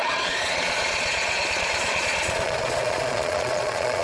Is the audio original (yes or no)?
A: no